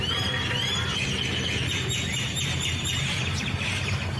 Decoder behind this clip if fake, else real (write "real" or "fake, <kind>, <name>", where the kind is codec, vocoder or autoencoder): fake, vocoder, BigVGAN v2